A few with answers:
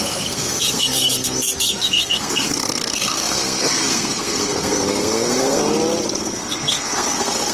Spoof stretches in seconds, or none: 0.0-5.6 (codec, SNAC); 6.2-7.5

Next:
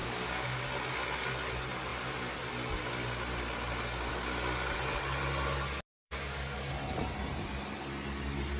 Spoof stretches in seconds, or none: 0.0-0.6 (codec, DAC); 5.9-6.7

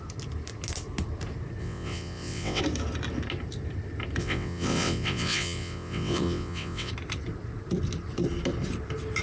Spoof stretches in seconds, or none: 1.6-2.6 (vocoder, WaveNeXt); 4.2-6.9